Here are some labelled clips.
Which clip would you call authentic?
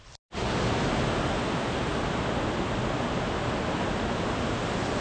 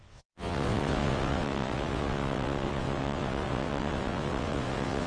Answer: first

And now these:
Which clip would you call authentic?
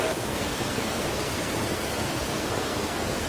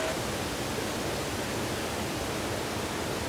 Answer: second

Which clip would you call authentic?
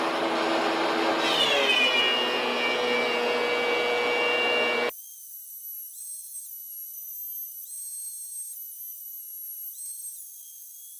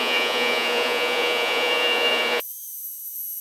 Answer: first